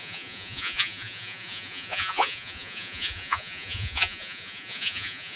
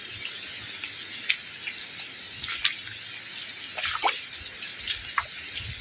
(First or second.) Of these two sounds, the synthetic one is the first